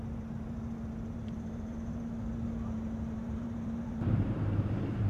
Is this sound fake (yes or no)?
yes